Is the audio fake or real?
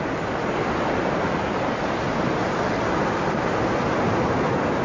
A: real